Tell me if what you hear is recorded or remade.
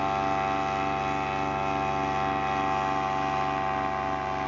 recorded